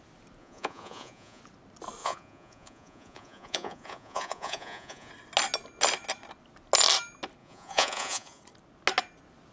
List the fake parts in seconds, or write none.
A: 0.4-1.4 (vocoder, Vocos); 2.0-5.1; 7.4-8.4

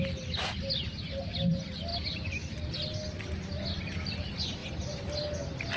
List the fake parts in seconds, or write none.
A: none

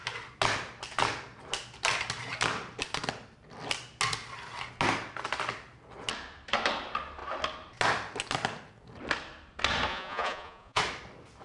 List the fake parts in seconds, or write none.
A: 9.9-10.8 (vocoder, Vocos)

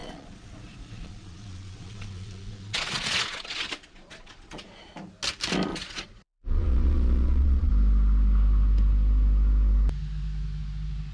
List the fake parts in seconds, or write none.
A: 0.0-4.9 (vocoder, Vocos); 5.7-7.7